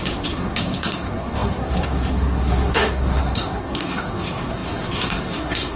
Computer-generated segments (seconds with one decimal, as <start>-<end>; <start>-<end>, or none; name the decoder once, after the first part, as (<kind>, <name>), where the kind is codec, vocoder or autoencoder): 0.0-5.8 (codec, SNAC)